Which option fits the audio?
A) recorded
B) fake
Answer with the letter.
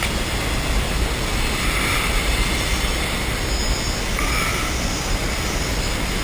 A